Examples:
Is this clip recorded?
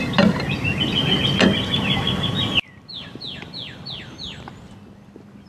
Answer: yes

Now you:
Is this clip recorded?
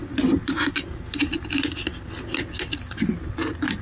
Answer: yes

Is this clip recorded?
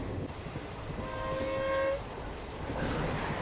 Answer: yes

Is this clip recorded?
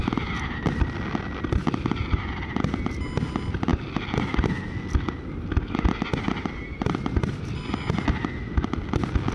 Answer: yes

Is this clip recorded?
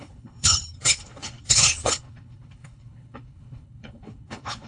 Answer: no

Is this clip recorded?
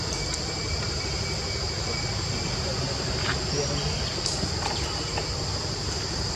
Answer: yes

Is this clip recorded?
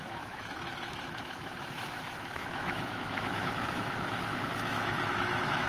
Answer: no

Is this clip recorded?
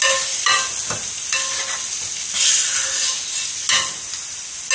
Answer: yes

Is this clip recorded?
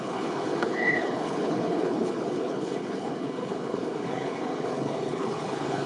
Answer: no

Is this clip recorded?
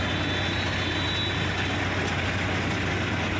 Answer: yes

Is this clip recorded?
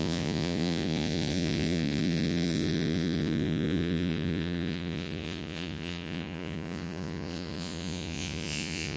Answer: no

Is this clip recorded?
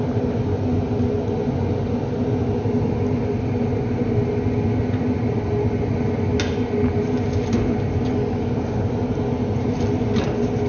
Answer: yes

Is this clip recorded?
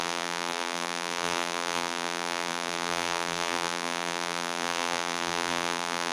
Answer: no